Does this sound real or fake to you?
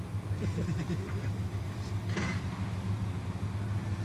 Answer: real